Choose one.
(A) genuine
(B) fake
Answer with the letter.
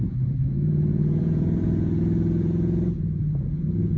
B